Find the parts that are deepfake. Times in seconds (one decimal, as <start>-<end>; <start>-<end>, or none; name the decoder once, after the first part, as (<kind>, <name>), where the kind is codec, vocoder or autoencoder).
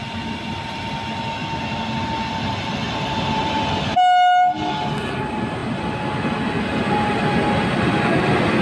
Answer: none